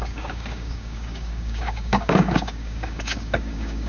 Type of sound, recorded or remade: remade